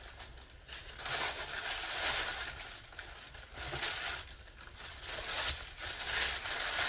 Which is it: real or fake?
real